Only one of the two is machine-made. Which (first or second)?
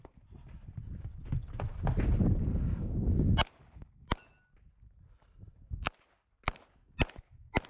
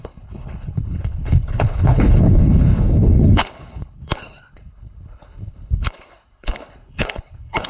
second